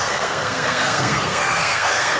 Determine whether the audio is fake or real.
fake